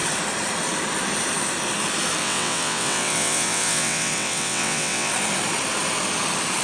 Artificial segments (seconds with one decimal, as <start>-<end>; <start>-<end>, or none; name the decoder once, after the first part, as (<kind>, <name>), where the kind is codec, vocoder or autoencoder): 2.2-5.1 (vocoder, WaveNeXt)